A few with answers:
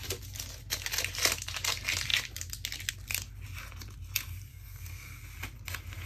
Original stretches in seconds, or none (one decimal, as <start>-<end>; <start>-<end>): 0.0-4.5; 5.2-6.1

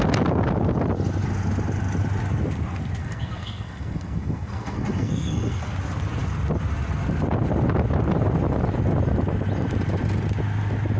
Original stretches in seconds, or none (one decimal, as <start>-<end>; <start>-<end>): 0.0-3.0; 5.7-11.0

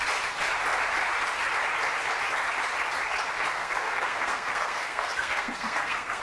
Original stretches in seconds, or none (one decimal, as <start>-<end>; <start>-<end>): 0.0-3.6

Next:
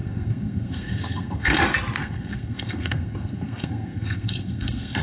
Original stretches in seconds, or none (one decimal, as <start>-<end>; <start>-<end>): 1.6-2.0

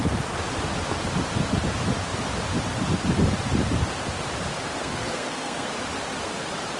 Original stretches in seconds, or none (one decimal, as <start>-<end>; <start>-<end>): 0.0-4.8; 5.7-6.8

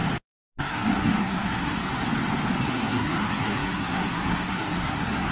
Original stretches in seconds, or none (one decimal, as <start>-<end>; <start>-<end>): 0.0-0.6; 1.8-2.7

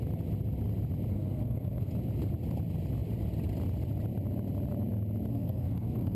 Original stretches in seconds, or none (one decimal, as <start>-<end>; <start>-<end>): 0.0-1.1; 1.9-5.3